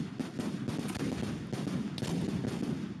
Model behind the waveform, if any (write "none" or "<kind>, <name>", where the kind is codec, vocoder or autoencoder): none